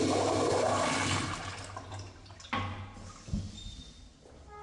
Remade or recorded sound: recorded